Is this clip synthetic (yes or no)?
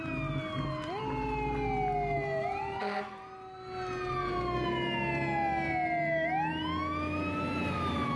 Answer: no